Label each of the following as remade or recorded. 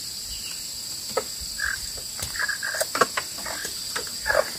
recorded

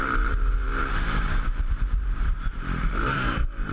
remade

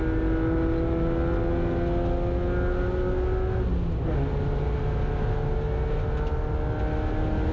recorded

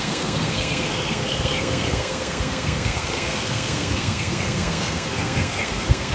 remade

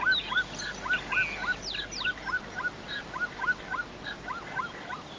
recorded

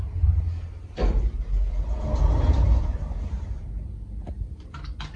recorded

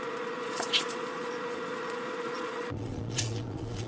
remade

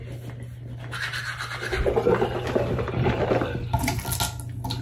recorded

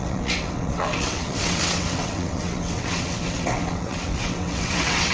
remade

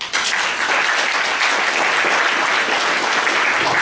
recorded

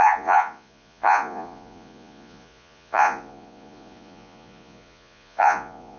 remade